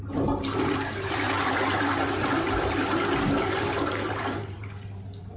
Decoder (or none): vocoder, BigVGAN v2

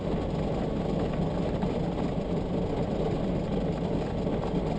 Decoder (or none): none